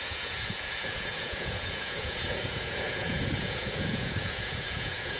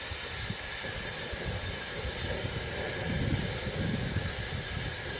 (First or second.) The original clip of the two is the second